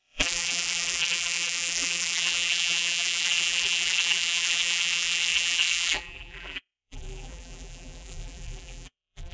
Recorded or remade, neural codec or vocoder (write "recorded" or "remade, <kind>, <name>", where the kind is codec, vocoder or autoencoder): remade, vocoder, BigVGAN v2